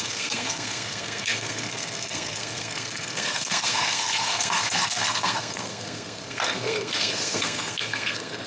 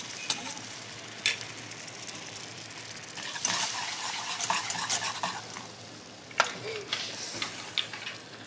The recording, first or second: second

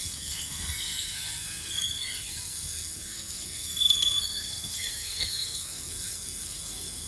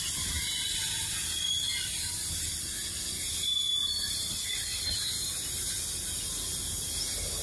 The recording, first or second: second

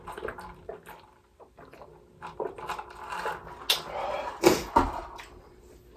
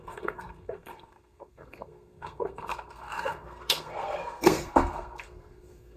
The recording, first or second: first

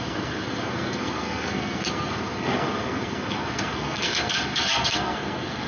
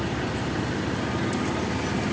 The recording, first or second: second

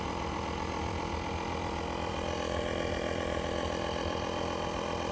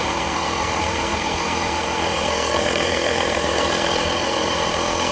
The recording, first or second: first